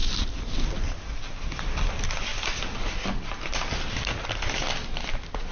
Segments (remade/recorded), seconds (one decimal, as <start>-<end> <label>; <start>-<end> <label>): 0.0-5.5 recorded